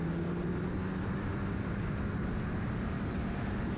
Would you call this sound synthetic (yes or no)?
no